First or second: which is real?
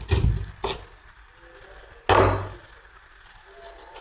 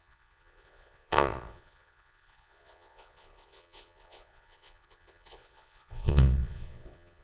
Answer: first